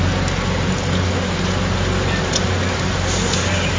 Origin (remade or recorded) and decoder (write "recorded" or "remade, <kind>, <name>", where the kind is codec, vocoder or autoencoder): recorded